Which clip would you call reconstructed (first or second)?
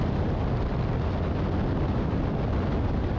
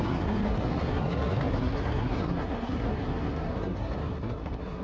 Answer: second